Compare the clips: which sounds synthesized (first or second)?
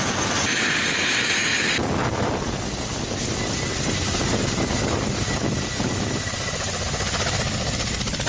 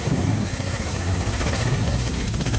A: second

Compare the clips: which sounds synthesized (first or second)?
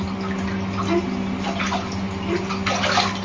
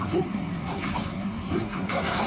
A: second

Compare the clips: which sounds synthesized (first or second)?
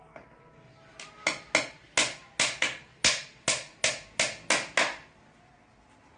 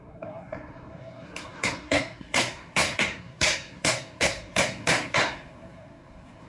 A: second